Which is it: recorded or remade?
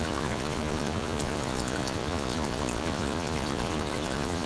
remade